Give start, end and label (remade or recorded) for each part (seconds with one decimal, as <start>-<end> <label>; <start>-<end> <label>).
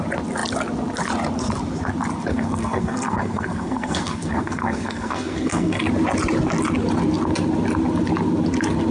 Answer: 0.0-2.3 recorded; 2.3-5.8 remade; 5.8-8.9 recorded